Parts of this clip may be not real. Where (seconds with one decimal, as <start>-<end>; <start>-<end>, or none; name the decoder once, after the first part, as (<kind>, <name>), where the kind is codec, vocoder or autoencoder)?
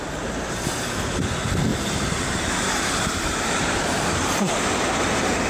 1.7-5.0 (vocoder, BigVGAN v2)